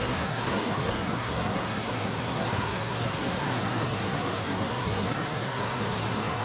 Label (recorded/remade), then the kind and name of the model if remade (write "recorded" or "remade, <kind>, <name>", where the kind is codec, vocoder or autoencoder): remade, codec, SNAC